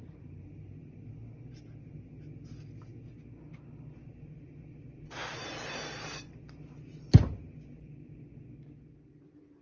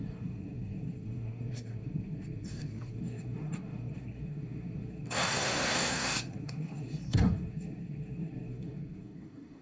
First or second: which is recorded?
first